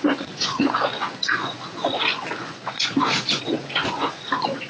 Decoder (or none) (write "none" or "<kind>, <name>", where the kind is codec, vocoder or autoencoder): vocoder, Vocos